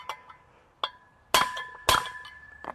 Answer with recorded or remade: recorded